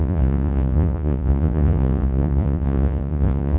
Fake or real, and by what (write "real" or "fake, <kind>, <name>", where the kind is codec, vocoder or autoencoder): fake, vocoder, Vocos